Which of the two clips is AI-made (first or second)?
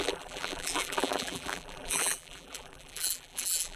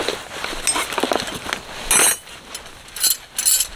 first